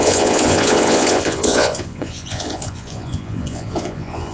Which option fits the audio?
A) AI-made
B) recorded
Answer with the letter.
A